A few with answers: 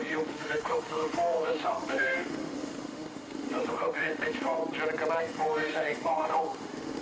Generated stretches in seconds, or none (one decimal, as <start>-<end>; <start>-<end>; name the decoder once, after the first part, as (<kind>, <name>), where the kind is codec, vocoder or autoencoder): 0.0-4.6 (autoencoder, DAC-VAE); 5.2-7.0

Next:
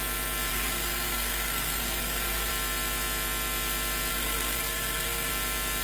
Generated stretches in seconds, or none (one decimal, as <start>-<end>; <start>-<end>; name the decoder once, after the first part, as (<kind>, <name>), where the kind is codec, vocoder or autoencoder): 0.5-2.5 (codec, SNAC); 4.1-5.3

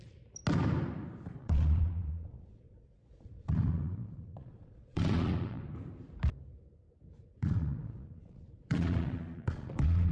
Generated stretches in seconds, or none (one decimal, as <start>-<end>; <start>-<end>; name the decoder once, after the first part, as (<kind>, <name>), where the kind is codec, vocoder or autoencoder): 1.4-5.6 (vocoder, Vocos); 7.3-10.1

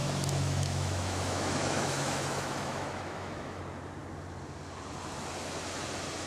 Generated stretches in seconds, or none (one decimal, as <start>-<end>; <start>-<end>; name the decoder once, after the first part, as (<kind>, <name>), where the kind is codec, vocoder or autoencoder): 0.0-3.6 (autoencoder, DAC-VAE)

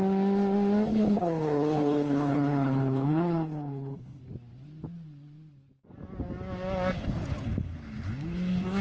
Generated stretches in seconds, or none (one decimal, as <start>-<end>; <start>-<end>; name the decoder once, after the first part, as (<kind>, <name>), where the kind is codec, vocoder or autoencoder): 0.9-4.2 (codec, HILCodec)